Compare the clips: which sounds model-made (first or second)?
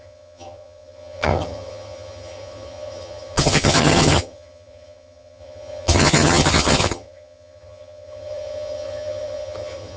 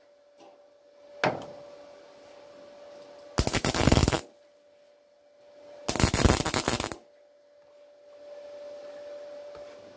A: first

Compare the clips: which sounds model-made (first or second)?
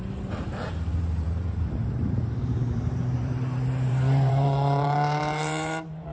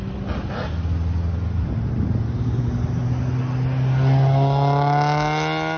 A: first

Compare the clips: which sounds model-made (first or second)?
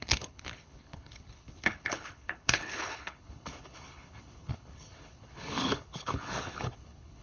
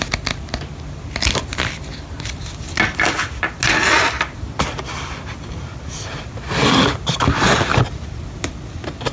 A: first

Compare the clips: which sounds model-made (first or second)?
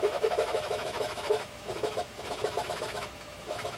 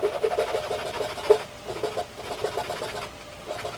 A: first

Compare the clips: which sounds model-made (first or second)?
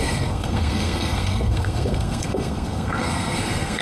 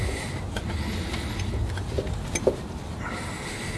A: first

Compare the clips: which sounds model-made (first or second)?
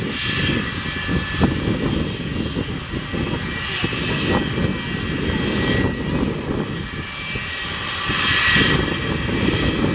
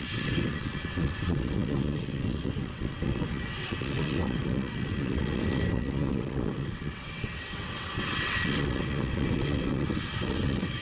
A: second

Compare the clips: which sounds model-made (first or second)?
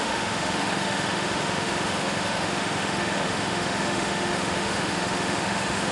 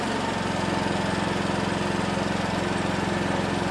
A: first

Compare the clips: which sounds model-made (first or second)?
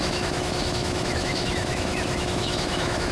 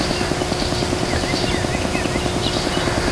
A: first